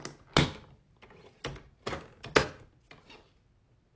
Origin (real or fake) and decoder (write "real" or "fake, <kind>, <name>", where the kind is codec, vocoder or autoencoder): real